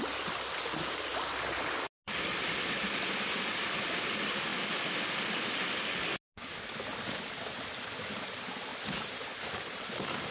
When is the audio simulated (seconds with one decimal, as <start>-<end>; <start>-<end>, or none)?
1.1-1.7; 8.7-9.6